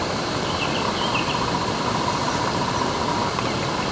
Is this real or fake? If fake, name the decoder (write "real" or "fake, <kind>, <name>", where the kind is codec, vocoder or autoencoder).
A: real